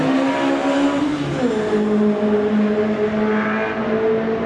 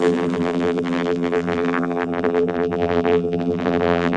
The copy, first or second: second